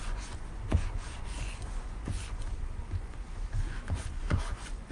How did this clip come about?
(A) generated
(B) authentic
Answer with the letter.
A